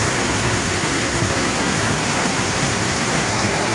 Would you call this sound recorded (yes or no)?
no